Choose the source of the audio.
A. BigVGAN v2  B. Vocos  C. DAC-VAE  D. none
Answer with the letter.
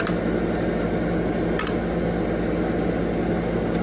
D